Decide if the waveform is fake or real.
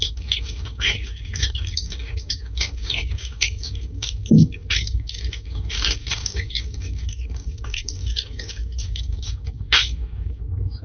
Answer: fake